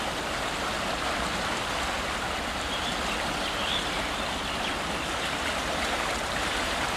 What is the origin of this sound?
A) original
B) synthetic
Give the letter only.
A